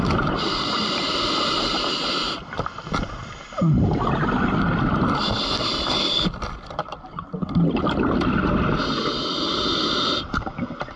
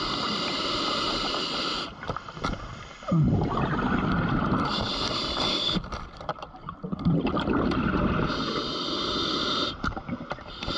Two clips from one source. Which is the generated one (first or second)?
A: second